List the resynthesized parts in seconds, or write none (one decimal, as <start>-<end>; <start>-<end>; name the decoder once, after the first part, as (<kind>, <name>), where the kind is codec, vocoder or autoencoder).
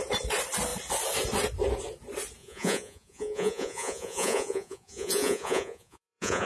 2.4-6.5 (vocoder, Vocos)